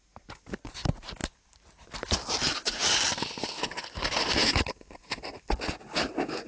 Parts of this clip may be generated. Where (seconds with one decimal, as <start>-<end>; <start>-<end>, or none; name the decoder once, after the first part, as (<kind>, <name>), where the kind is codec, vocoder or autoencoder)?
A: none